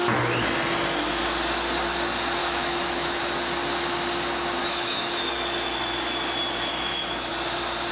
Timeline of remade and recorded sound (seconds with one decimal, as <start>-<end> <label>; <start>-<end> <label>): 0.0-2.4 recorded; 2.4-3.2 remade; 3.2-4.6 recorded; 4.6-5.2 remade; 5.2-6.7 recorded; 6.7-7.3 remade; 7.3-7.9 recorded